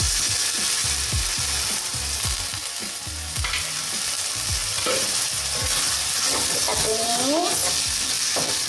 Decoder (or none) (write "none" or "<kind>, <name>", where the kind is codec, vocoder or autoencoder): none